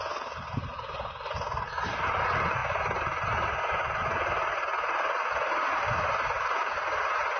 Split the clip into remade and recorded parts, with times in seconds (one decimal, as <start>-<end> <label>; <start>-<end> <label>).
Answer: 0.0-7.4 recorded